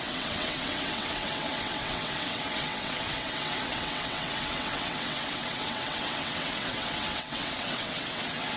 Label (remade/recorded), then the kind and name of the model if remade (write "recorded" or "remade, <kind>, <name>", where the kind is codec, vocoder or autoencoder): remade, vocoder, WaveNeXt